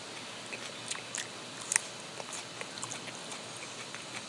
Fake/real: real